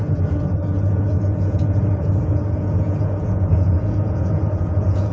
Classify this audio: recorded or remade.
remade